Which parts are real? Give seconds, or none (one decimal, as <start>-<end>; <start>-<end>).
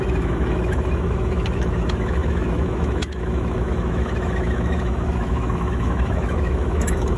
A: none